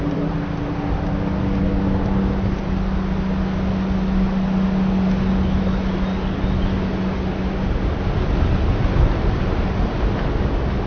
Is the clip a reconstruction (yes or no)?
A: no